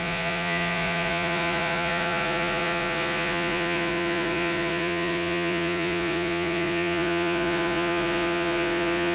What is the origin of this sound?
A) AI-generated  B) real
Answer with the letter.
A